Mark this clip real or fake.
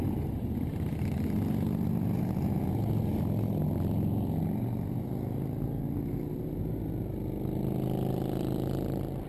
real